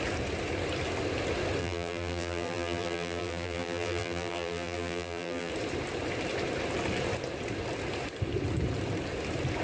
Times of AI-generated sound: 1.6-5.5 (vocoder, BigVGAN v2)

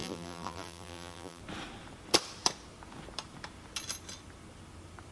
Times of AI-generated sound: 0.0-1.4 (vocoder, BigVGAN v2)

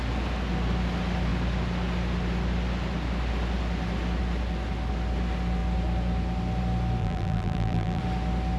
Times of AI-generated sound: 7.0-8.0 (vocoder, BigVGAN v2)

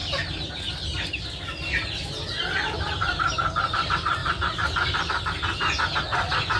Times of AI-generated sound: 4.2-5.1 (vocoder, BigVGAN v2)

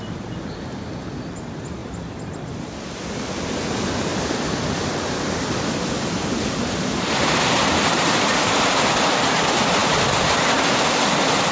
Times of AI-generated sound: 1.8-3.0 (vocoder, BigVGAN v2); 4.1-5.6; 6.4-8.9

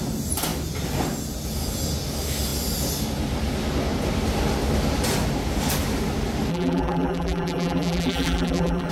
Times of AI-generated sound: 6.5-8.9 (vocoder, BigVGAN v2)

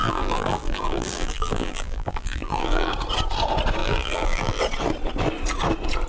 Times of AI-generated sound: 0.0-2.9 (vocoder, BigVGAN v2); 3.8-4.6